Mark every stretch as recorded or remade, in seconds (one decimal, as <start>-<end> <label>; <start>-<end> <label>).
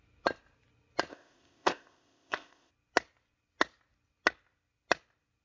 0.0-1.1 recorded; 1.1-2.7 remade; 2.7-5.4 recorded